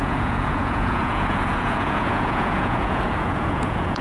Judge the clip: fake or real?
fake